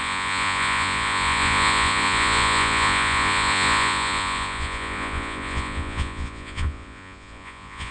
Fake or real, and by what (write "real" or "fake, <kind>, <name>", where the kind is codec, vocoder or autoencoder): fake, vocoder, Vocos